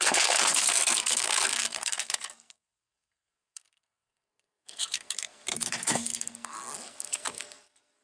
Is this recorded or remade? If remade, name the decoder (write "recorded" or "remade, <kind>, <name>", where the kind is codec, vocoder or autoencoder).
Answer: remade, codec, SNAC